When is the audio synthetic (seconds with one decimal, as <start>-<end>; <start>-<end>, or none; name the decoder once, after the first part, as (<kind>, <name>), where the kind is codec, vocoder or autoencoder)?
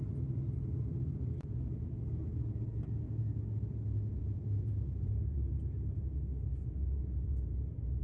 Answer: 4.1-5.6 (vocoder, BigVGAN v2); 6.6-8.0